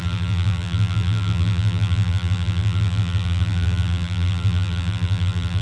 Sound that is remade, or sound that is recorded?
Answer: remade